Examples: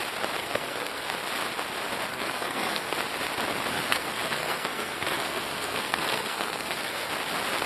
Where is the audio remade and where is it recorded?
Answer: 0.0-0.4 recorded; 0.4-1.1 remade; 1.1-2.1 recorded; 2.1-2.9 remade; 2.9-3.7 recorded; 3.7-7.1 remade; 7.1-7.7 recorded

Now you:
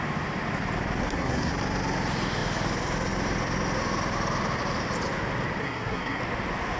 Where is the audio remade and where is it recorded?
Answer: 0.0-1.0 recorded; 1.0-1.5 remade; 1.5-5.6 recorded; 5.6-6.2 remade; 6.2-6.8 recorded

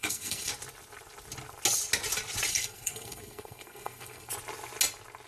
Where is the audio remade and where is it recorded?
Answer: 0.0-0.5 remade; 0.5-2.5 recorded; 2.5-4.3 remade; 4.3-5.3 recorded

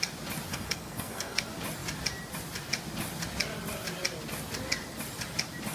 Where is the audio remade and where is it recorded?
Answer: 0.0-0.5 recorded; 0.5-1.4 remade; 1.4-5.7 recorded

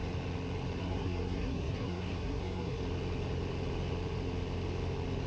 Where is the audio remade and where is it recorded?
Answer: 0.0-0.8 recorded; 0.8-2.8 remade; 2.8-5.3 recorded